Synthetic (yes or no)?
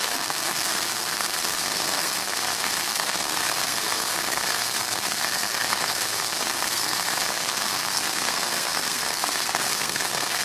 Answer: yes